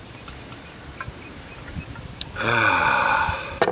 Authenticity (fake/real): fake